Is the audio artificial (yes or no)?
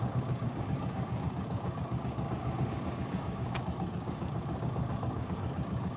yes